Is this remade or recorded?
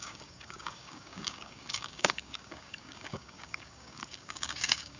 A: remade